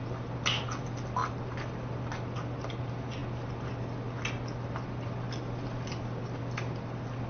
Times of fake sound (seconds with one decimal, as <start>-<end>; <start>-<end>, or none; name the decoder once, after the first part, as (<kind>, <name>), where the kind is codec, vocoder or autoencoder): none